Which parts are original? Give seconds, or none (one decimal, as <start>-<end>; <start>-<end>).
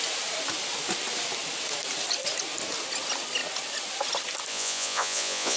0.0-4.5